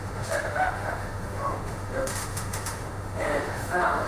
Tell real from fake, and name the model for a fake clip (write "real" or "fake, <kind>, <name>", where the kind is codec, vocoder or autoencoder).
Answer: fake, autoencoder, DAC-VAE